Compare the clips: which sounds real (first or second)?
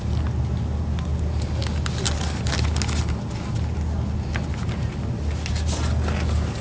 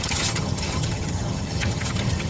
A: first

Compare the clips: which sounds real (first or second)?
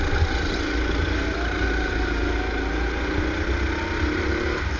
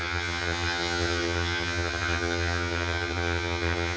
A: first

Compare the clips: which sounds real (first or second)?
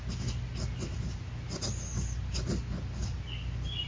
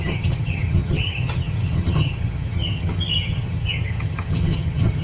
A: first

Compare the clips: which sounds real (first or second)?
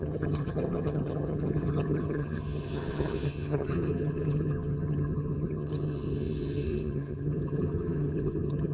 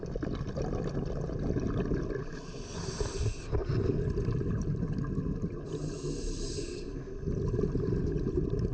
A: second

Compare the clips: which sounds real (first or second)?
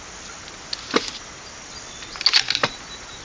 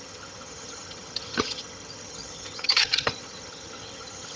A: first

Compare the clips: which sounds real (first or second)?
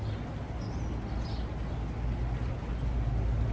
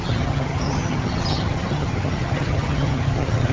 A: first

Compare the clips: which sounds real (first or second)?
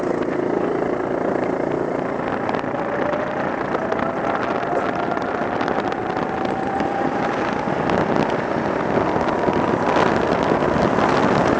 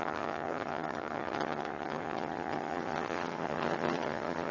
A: first